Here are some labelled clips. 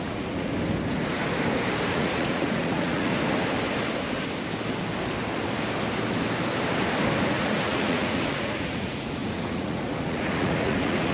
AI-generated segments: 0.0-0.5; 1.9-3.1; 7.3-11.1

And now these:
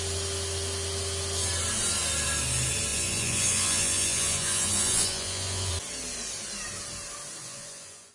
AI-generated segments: 2.9-5.7; 7.4-8.1

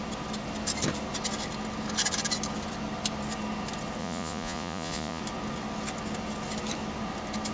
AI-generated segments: 4.0-5.2

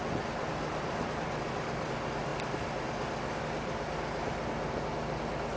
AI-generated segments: none